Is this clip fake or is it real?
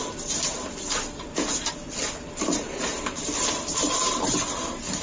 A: real